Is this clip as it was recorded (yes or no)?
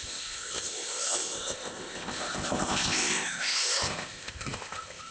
no